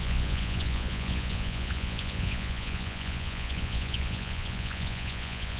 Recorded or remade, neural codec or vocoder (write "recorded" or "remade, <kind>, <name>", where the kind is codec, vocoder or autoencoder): remade, vocoder, Vocos